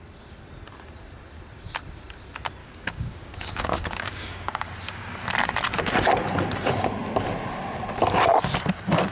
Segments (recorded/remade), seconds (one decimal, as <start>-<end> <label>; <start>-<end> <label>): 0.0-2.6 recorded; 2.6-4.7 remade; 4.7-9.1 recorded